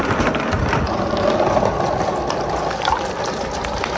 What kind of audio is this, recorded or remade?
recorded